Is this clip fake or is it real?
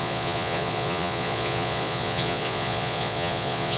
fake